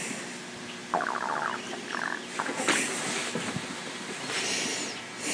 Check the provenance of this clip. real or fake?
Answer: real